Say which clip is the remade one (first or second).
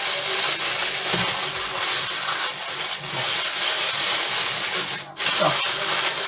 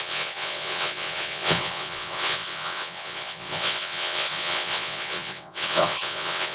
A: second